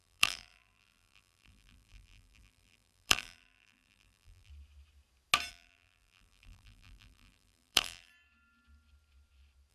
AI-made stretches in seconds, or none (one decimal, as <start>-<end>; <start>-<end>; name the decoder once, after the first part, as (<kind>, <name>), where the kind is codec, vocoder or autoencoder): 0.0-4.5 (vocoder, BigVGAN v2); 5.5-8.1